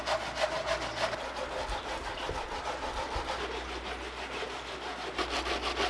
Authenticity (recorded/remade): recorded